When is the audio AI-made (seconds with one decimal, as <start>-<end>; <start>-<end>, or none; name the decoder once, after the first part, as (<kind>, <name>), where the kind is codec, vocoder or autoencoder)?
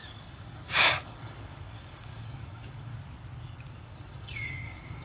0.0-2.9 (codec, DAC); 3.7-5.0